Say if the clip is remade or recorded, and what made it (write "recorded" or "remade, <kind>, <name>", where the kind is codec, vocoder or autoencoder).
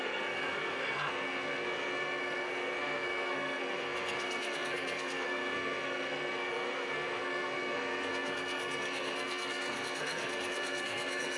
remade, codec, SNAC